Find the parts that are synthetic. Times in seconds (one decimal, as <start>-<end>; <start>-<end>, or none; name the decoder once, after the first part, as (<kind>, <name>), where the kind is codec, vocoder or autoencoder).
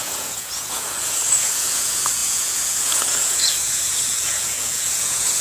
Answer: 0.0-5.4 (vocoder, Vocos)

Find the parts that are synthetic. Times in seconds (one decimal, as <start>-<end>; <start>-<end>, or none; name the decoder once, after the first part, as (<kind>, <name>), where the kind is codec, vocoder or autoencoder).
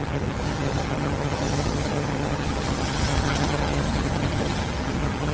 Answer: 0.0-5.3 (vocoder, HiFi-GAN)